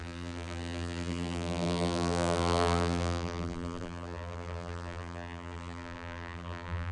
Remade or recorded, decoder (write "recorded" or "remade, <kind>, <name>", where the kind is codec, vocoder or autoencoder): remade, vocoder, BigVGAN v2